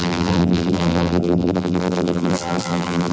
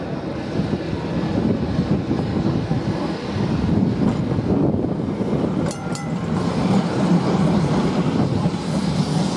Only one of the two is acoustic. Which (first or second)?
second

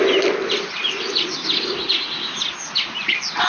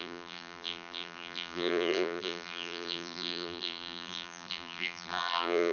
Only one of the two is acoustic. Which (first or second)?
first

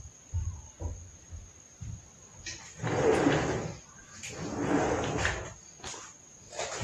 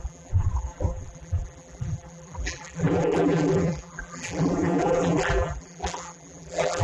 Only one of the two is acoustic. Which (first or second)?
first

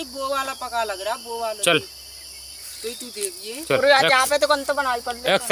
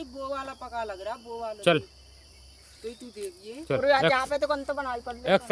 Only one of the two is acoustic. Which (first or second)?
first